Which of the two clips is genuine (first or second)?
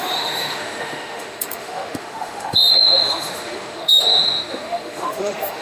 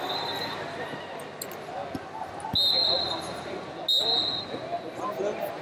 second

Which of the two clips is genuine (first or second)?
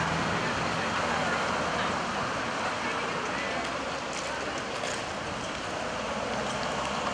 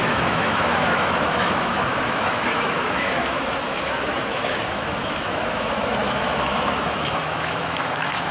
first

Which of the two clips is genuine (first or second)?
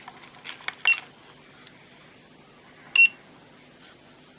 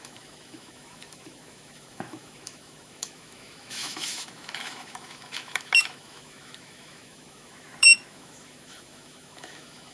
first